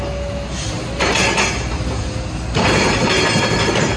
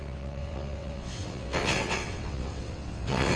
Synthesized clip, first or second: second